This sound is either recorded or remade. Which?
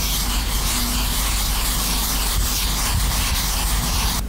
recorded